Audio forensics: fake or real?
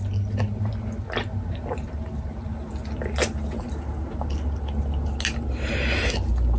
real